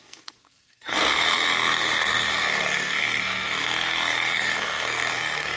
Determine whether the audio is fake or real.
fake